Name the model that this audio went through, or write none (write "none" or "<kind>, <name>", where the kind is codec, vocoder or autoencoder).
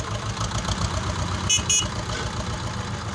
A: none